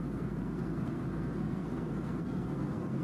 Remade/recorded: remade